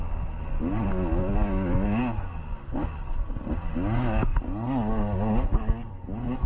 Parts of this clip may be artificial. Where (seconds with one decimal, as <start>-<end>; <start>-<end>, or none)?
3.0-3.7